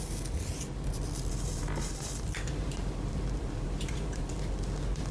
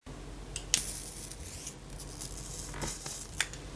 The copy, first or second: first